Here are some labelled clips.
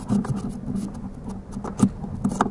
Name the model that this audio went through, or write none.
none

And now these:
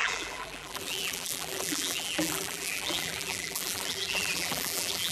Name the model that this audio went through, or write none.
vocoder, BigVGAN v2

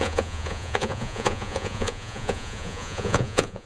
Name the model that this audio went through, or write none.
vocoder, Vocos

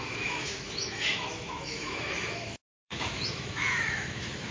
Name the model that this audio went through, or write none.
autoencoder, DAC-VAE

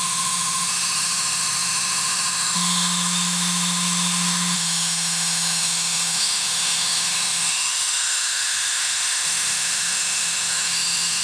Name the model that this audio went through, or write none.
autoencoder, DAC-VAE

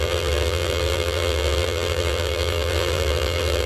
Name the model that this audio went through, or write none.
vocoder, BigVGAN v2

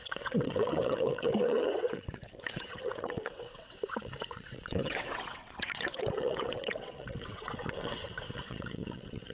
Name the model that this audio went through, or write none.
vocoder, WaveNeXt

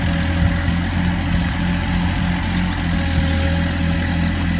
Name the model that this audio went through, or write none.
none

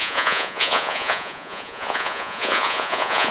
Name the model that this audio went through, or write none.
vocoder, Vocos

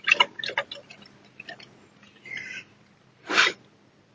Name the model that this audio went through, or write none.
none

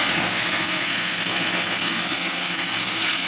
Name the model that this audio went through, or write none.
codec, SNAC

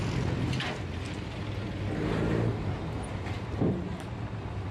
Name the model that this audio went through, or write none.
none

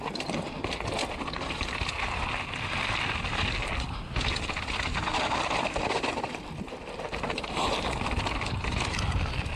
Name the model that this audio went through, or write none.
none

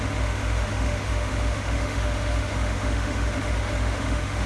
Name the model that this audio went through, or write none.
autoencoder, DAC-VAE